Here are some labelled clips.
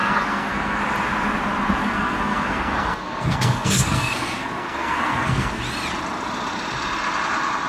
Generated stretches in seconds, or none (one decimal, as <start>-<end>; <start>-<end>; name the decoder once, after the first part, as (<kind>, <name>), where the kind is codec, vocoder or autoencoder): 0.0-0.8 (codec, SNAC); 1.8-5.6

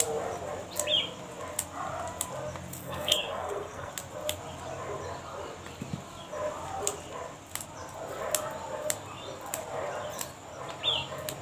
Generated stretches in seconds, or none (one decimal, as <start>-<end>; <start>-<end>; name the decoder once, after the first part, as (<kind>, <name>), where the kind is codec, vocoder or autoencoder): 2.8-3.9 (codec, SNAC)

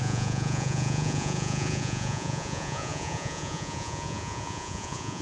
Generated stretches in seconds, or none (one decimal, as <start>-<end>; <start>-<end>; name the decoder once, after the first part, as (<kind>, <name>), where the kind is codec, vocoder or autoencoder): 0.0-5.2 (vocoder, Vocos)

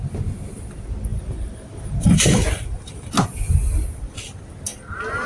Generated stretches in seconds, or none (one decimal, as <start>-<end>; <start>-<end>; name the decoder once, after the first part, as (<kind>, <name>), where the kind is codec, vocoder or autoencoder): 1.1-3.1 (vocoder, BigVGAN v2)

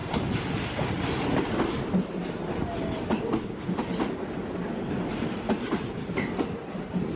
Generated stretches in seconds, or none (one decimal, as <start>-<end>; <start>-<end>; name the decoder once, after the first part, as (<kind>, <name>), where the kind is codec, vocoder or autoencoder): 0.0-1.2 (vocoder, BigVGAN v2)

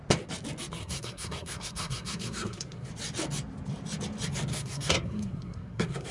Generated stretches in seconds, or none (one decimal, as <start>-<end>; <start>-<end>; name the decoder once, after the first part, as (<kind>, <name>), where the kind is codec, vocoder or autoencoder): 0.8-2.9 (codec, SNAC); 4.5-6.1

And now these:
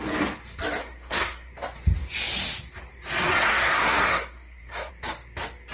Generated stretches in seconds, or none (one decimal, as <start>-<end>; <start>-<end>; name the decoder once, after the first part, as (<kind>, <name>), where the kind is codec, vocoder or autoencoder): 0.8-1.5 (codec, SNAC); 3.5-4.9

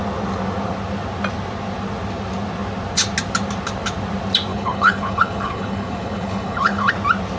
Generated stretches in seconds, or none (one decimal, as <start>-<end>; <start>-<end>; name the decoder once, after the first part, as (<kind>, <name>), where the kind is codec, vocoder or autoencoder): 4.5-6.9 (codec, HILCodec)